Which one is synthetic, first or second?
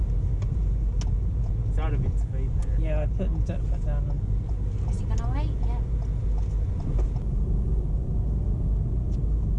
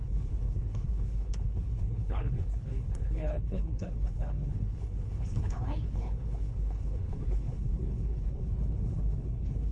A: second